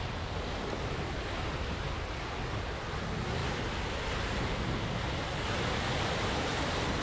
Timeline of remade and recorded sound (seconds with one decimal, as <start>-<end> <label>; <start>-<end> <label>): 0.0-7.0 recorded